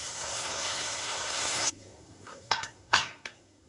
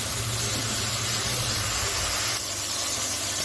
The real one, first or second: second